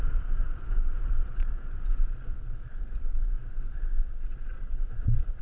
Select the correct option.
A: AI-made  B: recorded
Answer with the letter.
A